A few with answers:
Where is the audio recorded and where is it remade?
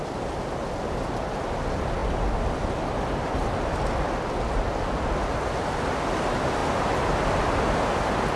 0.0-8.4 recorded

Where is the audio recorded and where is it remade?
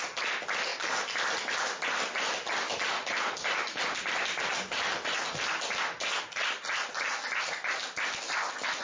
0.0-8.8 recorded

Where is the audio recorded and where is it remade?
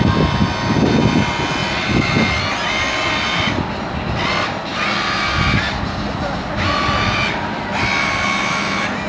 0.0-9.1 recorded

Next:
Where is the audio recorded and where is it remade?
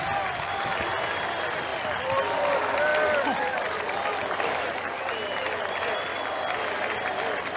0.0-1.7 recorded; 1.7-2.2 remade; 2.2-2.9 recorded; 2.9-5.1 remade; 5.1-7.6 recorded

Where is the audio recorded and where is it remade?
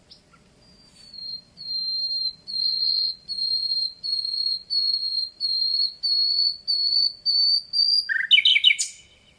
0.0-2.6 recorded; 2.6-3.1 remade; 3.1-9.4 recorded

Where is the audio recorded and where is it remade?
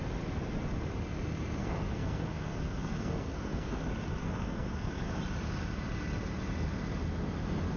0.0-1.6 recorded; 1.6-3.8 remade; 3.8-4.2 recorded; 4.2-5.1 remade; 5.1-7.8 recorded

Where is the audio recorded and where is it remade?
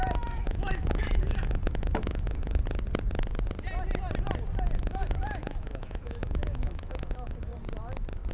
0.0-2.6 remade; 2.6-4.8 recorded; 4.8-7.5 remade; 7.5-8.3 recorded